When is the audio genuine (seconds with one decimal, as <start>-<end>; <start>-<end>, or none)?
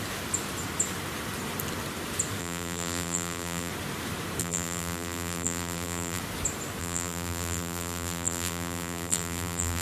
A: 0.0-2.4; 3.7-4.4; 6.2-6.8